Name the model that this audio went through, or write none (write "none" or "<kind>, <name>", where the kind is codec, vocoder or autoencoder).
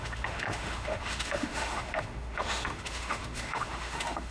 autoencoder, DAC-VAE